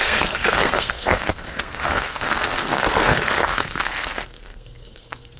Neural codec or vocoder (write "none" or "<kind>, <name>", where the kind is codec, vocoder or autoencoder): codec, SNAC